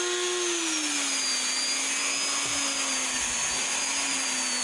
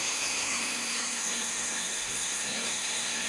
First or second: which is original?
first